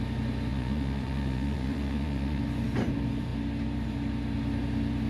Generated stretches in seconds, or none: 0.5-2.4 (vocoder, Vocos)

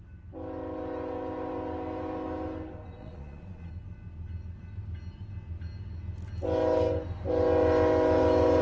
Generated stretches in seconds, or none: 3.0-3.7 (vocoder, Vocos)

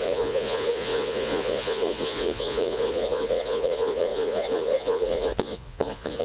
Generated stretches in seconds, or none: 0.0-6.2 (vocoder, Vocos)

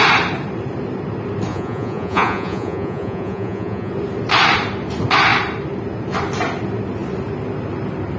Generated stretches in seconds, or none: 1.5-3.9 (vocoder, Vocos)